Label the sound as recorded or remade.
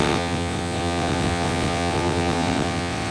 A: remade